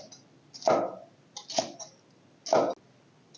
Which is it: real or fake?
real